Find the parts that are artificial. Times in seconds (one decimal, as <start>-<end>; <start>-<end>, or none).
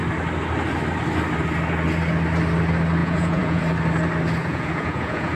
3.0-3.6; 4.4-5.3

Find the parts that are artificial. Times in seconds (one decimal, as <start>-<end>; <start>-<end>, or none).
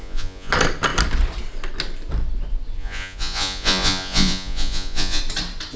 0.0-0.5; 2.8-5.2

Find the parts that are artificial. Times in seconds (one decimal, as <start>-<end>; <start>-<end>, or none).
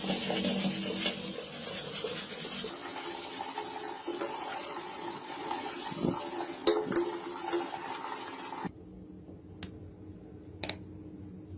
4.1-5.9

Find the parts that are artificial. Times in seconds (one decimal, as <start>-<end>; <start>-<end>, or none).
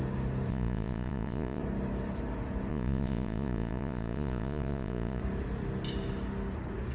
0.5-1.6; 2.7-5.2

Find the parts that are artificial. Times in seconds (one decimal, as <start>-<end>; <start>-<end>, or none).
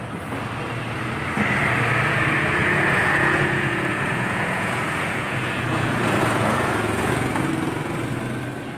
2.6-7.5